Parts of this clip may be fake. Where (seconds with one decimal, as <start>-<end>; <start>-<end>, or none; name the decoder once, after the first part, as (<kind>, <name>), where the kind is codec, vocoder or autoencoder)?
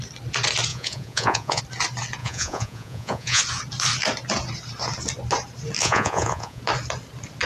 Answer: 0.7-1.6 (vocoder, Vocos); 2.2-3.4; 5.8-6.6